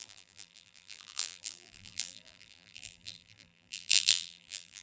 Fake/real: fake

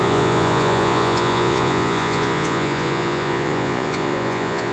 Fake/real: fake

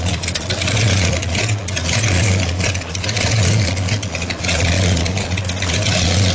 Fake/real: fake